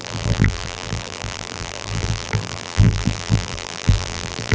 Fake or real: fake